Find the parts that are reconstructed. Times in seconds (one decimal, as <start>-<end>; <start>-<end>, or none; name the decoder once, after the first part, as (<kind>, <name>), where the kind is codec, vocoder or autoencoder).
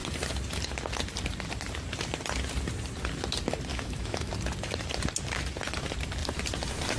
3.7-4.3 (autoencoder, DAC-VAE)